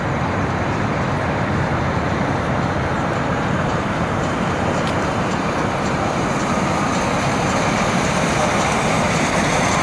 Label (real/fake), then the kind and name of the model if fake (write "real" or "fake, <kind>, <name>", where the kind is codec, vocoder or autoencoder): fake, vocoder, BigVGAN v2